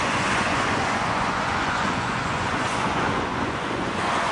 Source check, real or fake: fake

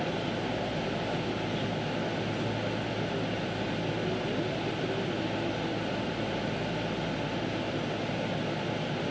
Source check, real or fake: real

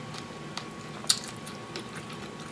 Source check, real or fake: real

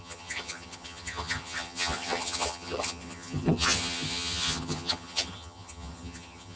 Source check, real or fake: fake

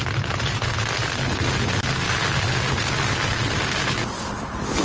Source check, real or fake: real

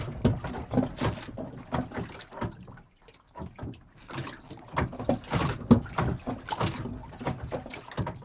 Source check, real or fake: real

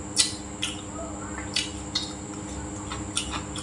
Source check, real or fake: real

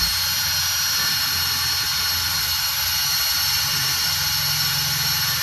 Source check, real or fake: real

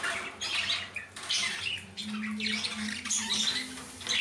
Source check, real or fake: real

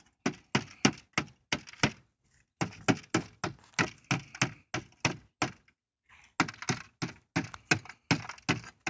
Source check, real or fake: real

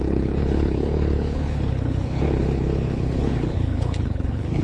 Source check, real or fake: fake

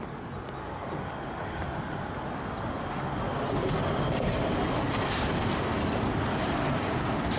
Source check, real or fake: real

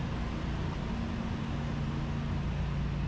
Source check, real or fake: real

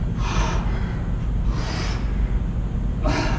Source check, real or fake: real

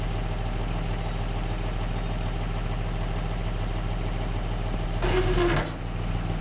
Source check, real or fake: real